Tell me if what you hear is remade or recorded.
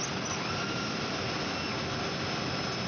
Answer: recorded